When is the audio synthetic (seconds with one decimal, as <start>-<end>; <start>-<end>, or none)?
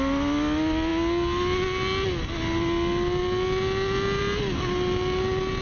none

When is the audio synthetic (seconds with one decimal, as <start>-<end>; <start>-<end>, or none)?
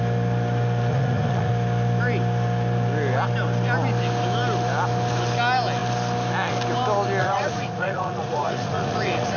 0.9-1.5; 7.2-9.4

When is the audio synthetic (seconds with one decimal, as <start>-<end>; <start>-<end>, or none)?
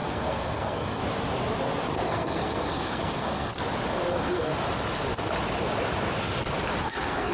0.0-1.0; 2.1-3.5; 4.1-4.5; 6.8-7.3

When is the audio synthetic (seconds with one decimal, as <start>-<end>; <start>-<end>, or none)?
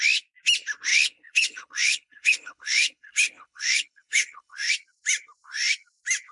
0.9-4.7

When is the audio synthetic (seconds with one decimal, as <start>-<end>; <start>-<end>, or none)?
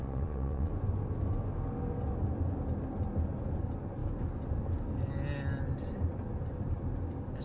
0.0-0.7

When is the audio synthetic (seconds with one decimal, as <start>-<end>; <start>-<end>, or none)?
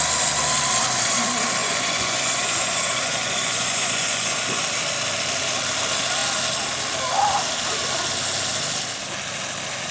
1.6-4.4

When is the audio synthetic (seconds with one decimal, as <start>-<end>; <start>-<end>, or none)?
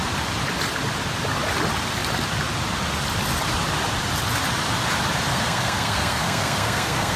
5.3-7.2